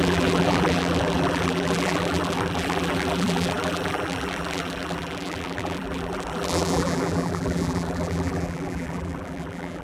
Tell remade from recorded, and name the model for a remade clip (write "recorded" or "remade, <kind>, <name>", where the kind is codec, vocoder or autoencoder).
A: remade, vocoder, BigVGAN v2